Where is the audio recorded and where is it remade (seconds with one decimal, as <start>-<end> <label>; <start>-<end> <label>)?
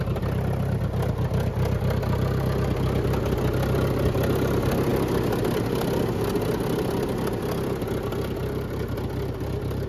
0.0-9.9 recorded